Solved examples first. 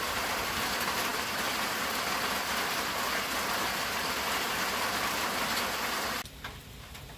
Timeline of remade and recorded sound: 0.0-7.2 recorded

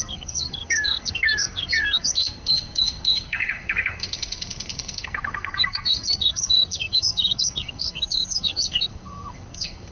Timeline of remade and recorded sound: 0.0-9.9 remade

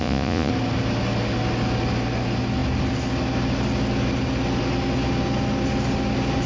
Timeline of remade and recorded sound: 0.0-0.5 remade; 0.5-6.5 recorded

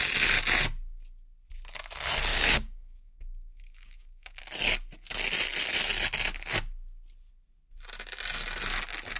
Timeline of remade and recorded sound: 0.0-2.3 recorded; 2.3-4.4 remade; 4.4-9.2 recorded